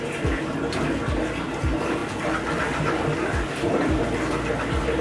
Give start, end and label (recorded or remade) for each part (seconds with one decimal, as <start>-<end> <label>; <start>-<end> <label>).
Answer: 0.0-5.0 recorded